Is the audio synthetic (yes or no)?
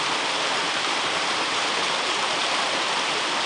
no